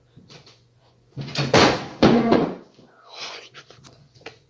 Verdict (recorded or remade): remade